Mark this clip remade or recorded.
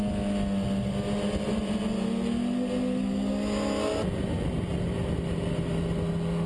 recorded